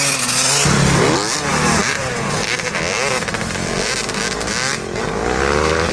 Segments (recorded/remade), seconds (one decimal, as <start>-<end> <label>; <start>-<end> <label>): 0.0-5.9 recorded